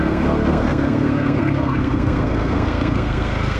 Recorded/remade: remade